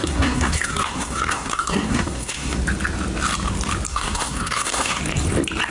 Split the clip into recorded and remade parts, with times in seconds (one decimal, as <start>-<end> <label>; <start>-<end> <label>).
0.0-2.6 remade; 2.6-3.9 recorded; 3.9-5.0 remade; 5.0-5.7 recorded